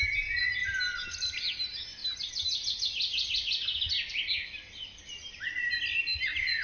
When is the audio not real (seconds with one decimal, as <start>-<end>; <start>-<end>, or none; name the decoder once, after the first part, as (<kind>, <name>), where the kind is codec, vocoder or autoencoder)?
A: 0.0-0.6 (vocoder, BigVGAN v2); 1.6-2.0; 6.0-6.6